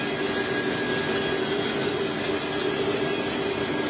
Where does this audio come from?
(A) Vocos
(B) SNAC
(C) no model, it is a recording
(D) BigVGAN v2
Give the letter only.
C